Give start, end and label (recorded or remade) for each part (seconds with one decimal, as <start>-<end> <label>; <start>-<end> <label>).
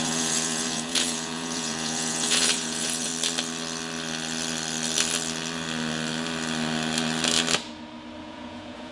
0.0-3.1 remade; 3.1-8.2 recorded; 8.2-8.9 remade